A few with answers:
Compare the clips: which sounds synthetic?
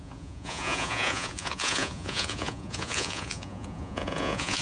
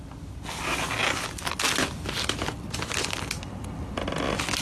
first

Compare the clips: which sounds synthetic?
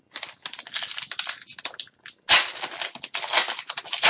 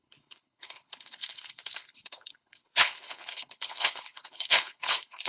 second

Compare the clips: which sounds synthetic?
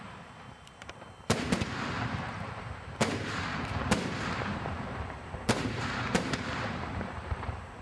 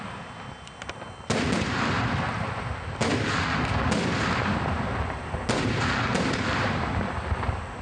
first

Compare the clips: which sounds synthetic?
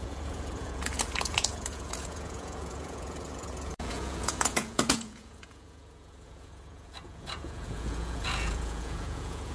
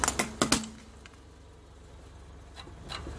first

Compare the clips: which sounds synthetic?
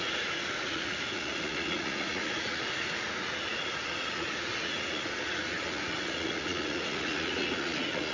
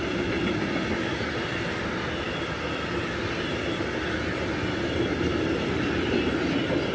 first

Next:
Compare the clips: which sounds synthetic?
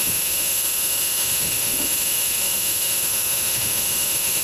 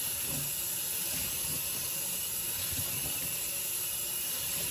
first